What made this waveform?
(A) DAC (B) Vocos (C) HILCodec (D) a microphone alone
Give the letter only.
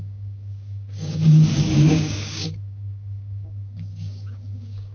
A